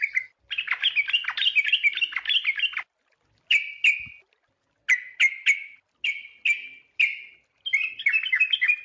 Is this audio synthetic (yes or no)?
no